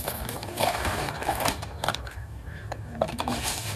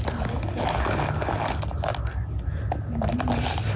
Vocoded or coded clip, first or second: first